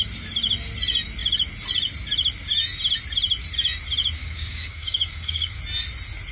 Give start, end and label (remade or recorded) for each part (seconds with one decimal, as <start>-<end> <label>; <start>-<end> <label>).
0.0-4.2 recorded; 4.2-5.6 remade; 5.6-6.3 recorded